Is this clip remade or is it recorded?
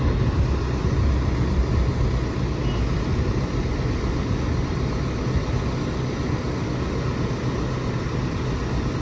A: recorded